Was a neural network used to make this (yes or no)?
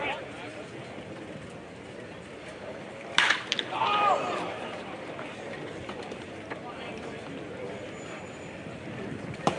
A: yes